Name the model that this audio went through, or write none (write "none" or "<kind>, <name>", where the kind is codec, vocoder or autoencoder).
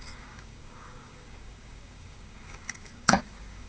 codec, DAC